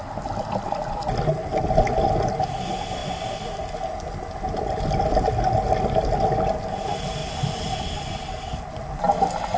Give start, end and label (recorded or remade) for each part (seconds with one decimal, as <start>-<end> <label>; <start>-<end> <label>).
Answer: 0.0-9.6 recorded